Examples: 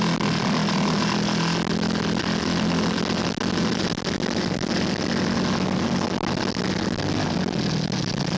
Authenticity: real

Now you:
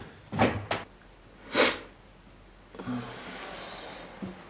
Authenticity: real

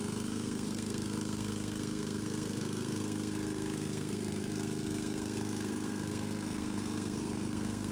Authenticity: fake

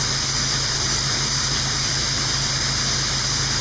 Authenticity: real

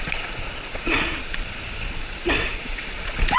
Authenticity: fake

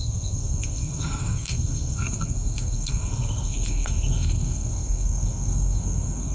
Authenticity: fake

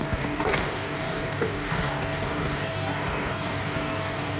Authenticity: fake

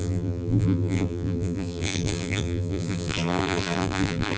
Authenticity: fake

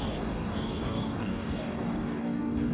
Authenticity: fake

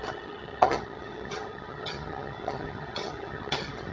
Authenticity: fake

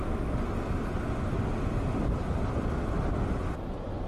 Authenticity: real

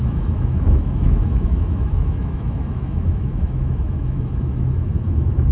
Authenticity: fake